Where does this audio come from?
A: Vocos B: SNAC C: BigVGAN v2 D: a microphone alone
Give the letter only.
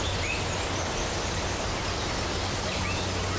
D